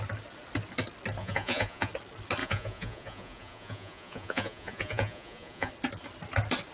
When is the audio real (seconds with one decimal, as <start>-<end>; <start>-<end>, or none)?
0.0-1.2; 1.9-2.4; 5.7-6.7